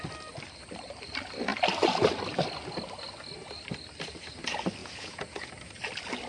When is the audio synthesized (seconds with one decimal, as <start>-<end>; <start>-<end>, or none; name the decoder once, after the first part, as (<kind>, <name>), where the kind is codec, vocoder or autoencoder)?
4.8-5.5 (vocoder, Vocos)